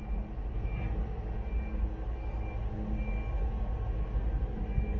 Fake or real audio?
real